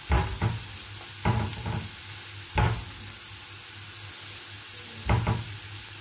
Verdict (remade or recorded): recorded